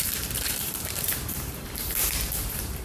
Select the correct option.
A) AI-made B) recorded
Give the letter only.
A